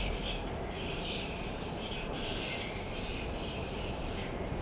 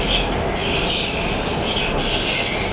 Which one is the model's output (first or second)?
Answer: first